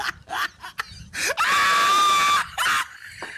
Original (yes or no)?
yes